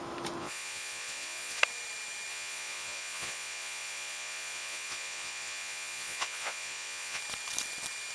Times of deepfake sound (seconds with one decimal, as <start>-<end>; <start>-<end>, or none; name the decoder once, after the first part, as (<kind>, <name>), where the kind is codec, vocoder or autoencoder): 0.4-1.6 (vocoder, Vocos); 2.3-7.2